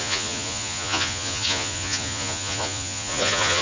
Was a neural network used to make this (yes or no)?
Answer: yes